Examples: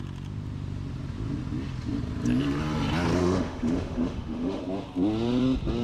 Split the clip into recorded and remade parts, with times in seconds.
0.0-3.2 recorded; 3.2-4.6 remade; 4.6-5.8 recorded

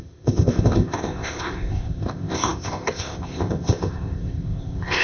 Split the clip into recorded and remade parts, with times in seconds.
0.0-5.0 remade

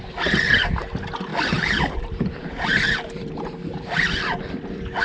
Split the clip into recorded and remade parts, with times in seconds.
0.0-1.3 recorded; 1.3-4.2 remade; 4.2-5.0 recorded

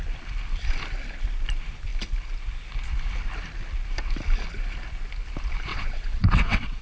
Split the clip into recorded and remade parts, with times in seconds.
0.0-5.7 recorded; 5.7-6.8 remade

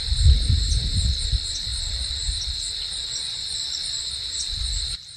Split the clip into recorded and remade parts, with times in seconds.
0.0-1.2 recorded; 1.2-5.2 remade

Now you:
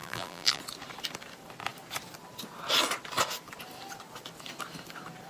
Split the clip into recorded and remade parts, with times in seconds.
0.0-0.6 remade; 0.6-5.3 recorded

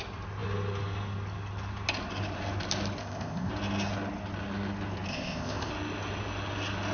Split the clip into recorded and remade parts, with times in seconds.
0.0-3.0 recorded; 3.0-3.5 remade; 3.5-5.1 recorded; 5.1-5.7 remade; 5.7-6.9 recorded

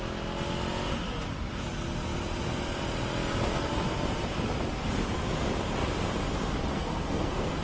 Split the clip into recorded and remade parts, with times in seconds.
0.0-6.7 recorded; 6.7-7.6 remade